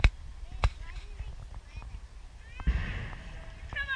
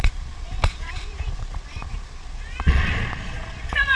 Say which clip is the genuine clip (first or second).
first